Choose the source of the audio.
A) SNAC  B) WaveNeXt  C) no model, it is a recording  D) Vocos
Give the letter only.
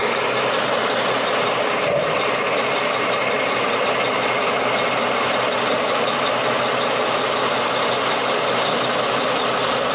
C